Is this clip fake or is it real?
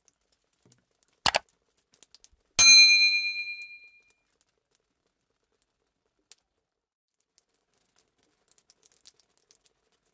real